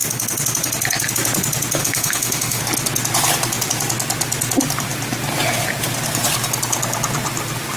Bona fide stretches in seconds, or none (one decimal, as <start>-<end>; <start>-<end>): 0.0-1.8; 2.6-7.8